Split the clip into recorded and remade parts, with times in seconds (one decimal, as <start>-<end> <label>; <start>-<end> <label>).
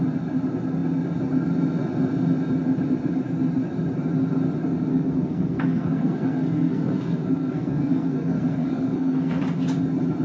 0.0-4.9 recorded; 4.9-9.4 remade; 9.4-10.2 recorded